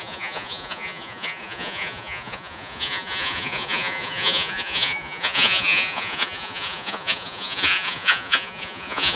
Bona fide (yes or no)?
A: no